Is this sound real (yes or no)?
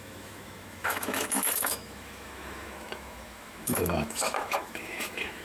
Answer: no